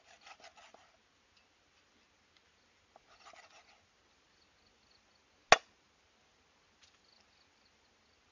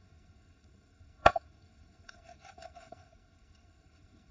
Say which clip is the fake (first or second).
second